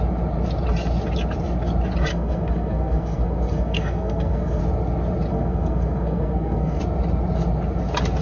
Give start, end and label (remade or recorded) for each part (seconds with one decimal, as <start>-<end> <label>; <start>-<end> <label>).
0.0-2.1 recorded; 2.1-4.6 remade; 4.6-5.3 recorded; 5.3-6.8 remade; 6.8-8.2 recorded